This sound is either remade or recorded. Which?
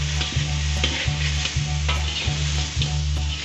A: recorded